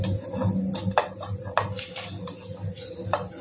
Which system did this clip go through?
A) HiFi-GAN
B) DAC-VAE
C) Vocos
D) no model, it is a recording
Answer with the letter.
D